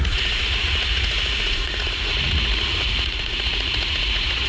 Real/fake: fake